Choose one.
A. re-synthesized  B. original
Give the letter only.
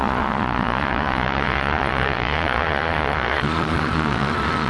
A